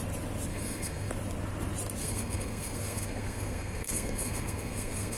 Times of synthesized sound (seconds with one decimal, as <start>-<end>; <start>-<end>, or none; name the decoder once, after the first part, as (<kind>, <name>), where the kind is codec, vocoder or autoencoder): 0.5-1.1 (codec, SNAC); 2.0-5.2